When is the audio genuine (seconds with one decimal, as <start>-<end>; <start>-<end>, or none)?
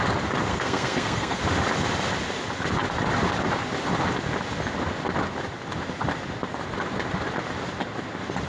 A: 0.0-0.5; 1.4-8.5